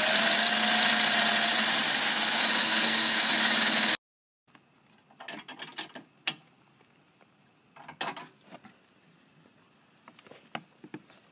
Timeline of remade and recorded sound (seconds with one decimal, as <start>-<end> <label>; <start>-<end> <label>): 0.0-2.6 recorded; 2.6-3.3 remade; 3.3-11.3 recorded